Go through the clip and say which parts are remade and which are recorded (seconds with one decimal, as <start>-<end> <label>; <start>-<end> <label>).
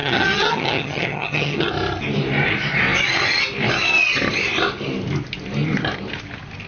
0.0-1.7 remade; 1.7-6.7 recorded